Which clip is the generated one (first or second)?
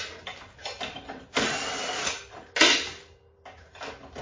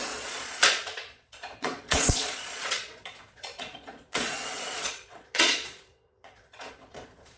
second